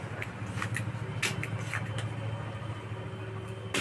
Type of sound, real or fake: real